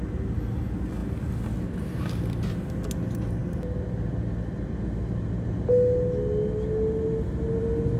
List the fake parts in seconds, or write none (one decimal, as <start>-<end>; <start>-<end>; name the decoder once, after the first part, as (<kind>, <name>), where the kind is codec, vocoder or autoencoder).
none